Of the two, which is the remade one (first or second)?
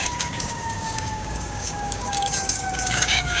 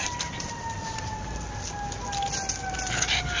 first